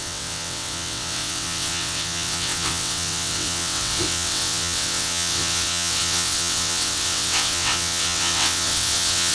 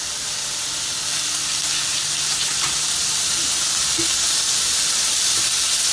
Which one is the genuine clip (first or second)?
second